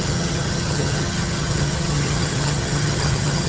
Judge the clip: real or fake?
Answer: fake